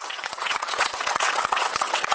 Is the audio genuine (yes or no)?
no